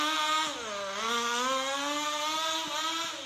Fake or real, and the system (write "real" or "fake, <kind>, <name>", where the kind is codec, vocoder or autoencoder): real